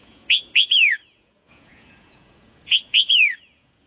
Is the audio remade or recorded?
remade